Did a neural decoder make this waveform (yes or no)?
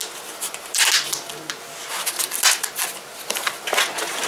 no